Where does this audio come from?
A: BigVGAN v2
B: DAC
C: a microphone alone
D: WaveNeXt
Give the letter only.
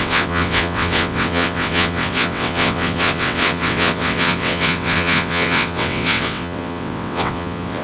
D